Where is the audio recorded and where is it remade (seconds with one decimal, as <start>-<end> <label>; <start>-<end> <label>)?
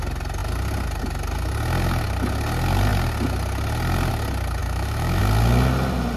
0.0-4.6 recorded; 4.6-5.2 remade; 5.2-6.2 recorded